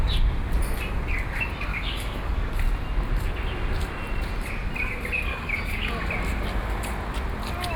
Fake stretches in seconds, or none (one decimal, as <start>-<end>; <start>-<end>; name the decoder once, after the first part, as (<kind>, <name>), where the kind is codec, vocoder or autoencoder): 1.7-2.5 (codec, DAC); 5.3-5.9